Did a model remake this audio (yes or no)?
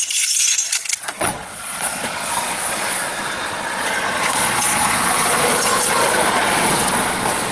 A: yes